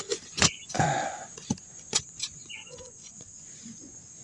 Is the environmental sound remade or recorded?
remade